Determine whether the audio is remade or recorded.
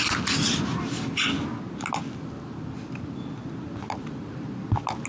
recorded